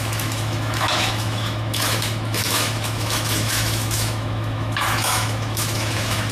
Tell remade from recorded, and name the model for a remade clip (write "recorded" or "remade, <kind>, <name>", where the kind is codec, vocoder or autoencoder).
remade, autoencoder, DAC-VAE